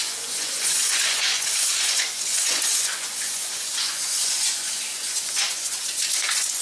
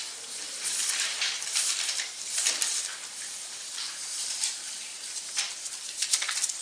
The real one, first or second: second